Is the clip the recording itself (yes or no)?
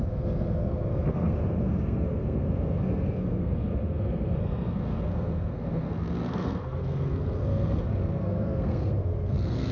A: no